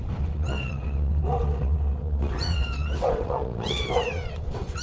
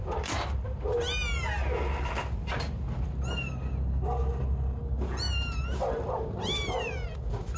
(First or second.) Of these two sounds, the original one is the second